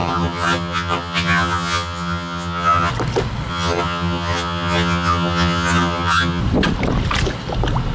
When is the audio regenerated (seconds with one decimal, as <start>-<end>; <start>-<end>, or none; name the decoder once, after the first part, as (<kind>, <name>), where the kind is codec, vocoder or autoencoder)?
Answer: 0.0-2.9 (vocoder, HiFi-GAN); 3.5-6.4